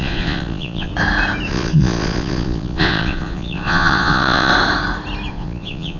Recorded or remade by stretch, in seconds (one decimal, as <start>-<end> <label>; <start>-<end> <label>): 0.0-0.9 remade; 0.9-1.5 recorded; 1.5-4.5 remade; 4.5-5.3 recorded; 5.3-6.0 remade